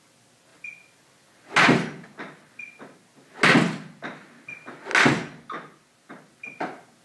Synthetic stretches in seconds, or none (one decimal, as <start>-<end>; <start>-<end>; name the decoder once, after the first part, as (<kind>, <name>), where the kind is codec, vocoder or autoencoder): none